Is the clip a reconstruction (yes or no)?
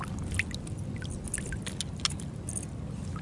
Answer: no